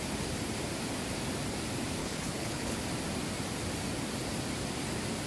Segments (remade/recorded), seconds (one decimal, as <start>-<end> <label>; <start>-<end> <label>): 0.0-2.0 recorded; 2.0-2.8 remade; 2.8-5.3 recorded